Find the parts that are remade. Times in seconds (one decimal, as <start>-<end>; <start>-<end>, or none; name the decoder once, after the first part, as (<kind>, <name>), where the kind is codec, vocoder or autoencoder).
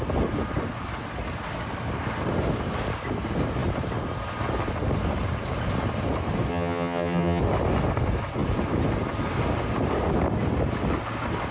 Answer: 6.5-7.4 (vocoder, HiFi-GAN)